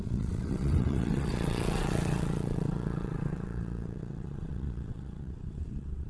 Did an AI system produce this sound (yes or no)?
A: yes